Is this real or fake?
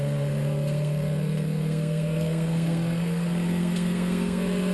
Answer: fake